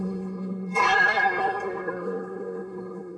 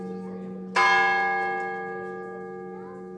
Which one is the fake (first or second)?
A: first